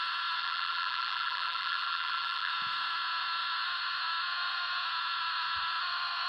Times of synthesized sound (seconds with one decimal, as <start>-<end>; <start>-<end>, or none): 0.4-2.5